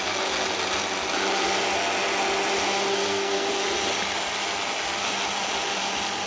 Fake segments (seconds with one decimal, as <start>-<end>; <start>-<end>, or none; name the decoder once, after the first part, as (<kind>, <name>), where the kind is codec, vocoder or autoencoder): 2.9-3.5 (codec, SNAC)